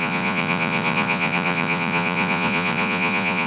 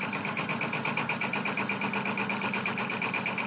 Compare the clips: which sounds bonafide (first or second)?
second